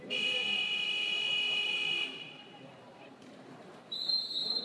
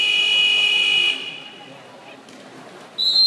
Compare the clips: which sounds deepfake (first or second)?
first